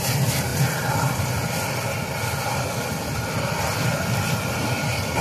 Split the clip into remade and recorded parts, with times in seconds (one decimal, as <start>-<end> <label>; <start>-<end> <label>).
0.0-5.2 recorded